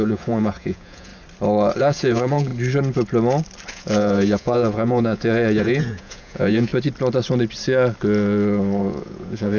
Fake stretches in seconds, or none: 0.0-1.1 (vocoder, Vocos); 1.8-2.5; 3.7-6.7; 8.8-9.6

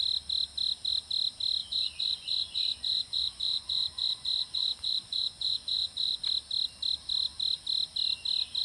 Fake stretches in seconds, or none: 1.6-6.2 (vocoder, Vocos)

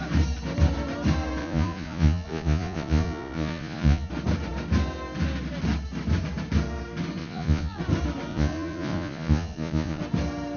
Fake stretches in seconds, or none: 1.4-4.1 (vocoder, Vocos); 7.2-7.8; 8.3-10.0